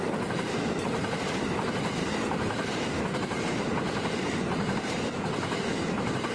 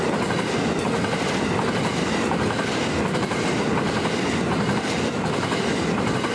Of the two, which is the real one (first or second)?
second